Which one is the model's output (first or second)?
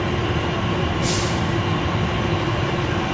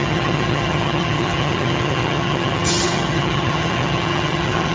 second